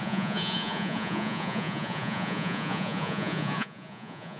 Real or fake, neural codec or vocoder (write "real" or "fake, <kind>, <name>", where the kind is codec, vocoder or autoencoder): fake, vocoder, Vocos